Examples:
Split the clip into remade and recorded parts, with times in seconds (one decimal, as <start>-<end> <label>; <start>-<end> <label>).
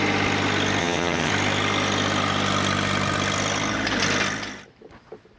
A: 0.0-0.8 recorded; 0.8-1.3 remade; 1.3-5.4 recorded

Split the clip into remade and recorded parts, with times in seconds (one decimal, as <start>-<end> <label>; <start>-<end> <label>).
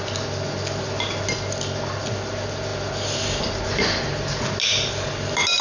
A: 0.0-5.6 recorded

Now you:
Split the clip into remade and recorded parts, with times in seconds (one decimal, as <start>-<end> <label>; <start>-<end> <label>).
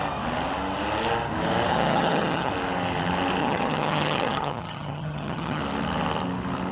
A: 0.0-1.7 recorded; 1.7-2.5 remade; 2.5-3.4 recorded; 3.4-5.6 remade; 5.6-6.7 recorded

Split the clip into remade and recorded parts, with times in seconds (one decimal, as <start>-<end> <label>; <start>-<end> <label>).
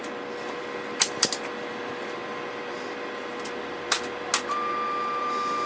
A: 0.0-5.7 recorded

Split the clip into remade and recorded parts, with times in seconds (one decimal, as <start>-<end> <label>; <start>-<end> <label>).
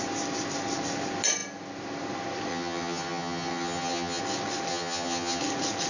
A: 0.0-2.5 recorded; 2.5-4.2 remade; 4.2-4.7 recorded; 4.7-5.4 remade; 5.4-5.9 recorded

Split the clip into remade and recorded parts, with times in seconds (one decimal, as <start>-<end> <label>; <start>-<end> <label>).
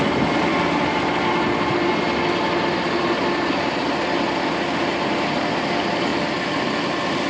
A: 0.0-7.3 recorded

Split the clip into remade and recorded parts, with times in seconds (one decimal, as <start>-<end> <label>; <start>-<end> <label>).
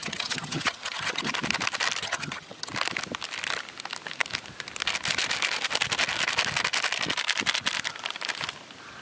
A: 0.0-1.3 remade; 1.3-2.0 recorded; 2.0-2.7 remade; 2.7-9.0 recorded